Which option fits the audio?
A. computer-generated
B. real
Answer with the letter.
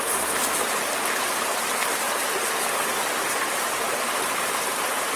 B